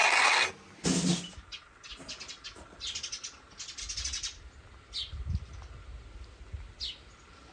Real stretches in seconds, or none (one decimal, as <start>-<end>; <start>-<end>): 0.0-7.5